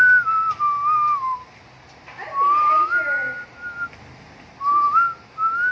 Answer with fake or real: real